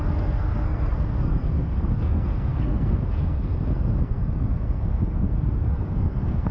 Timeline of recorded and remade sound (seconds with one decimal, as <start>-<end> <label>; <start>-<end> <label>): 0.0-6.5 remade